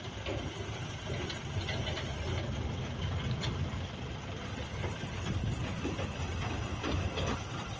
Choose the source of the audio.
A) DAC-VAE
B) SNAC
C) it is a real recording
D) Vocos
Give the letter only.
C